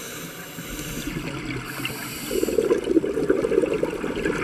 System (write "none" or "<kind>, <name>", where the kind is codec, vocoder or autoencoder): none